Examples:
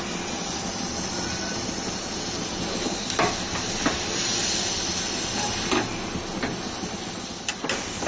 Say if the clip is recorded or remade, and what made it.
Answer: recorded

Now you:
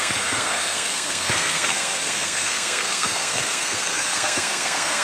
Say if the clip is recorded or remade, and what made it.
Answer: remade, codec, SNAC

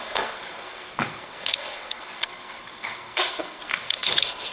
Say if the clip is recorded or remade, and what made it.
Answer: remade, codec, SNAC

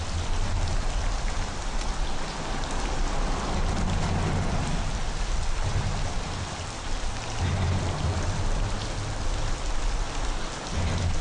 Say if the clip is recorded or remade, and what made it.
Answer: recorded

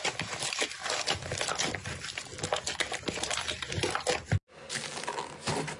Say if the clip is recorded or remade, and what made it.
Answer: recorded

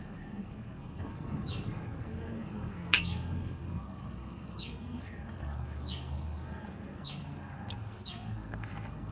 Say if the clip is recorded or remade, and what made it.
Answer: remade, codec, SNAC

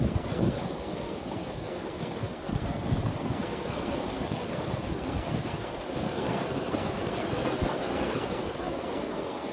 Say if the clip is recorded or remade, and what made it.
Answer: remade, codec, SNAC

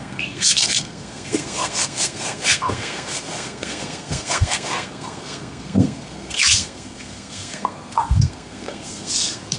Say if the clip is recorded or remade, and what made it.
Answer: remade, codec, SNAC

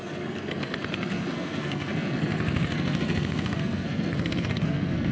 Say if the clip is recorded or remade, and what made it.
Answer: remade, codec, SNAC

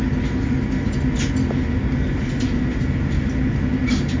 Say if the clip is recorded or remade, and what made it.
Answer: recorded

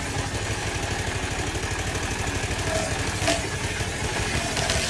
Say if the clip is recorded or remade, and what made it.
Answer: recorded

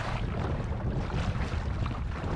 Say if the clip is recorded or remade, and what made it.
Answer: recorded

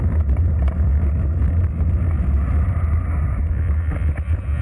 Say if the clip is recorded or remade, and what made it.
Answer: recorded